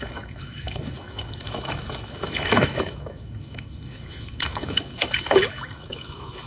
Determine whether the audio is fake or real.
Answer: fake